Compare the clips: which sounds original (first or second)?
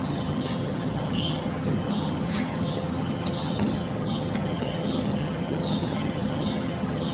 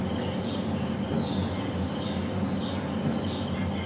second